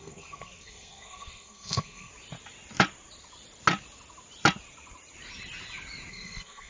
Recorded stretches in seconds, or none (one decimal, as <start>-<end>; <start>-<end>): 2.1-6.1